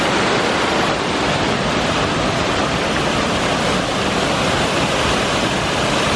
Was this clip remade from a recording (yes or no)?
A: yes